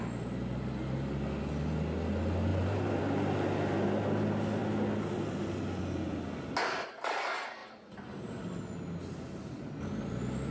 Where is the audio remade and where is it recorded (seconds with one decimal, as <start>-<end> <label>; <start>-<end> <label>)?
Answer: 0.0-2.5 recorded; 2.5-3.0 remade; 3.0-7.6 recorded; 7.6-8.4 remade; 8.4-10.5 recorded